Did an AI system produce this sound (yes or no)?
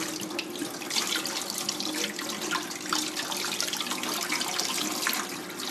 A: no